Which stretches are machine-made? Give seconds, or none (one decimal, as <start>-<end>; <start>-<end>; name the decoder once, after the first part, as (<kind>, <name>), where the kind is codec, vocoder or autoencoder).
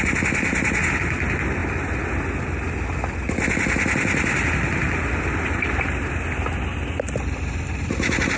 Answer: none